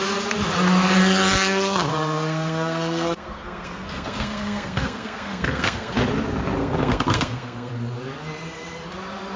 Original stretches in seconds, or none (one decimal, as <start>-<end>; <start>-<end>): 0.0-1.9; 5.9-6.6; 7.7-9.4